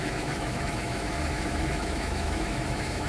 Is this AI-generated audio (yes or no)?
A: yes